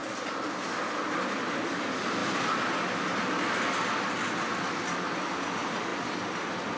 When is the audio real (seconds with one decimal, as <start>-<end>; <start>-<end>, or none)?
0.0-6.8